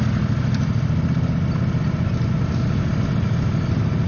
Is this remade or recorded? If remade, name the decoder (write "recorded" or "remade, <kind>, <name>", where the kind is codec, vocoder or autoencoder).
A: recorded